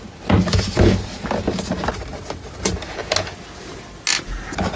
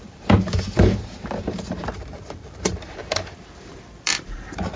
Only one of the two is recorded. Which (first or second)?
first